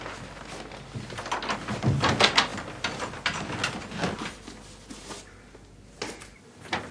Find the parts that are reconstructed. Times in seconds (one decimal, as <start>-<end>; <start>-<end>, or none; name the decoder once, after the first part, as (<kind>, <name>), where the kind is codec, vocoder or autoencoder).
none